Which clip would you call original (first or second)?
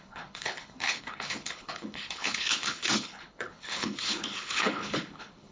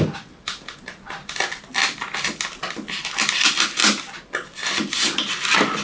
second